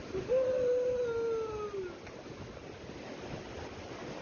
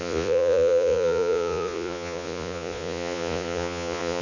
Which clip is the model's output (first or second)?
second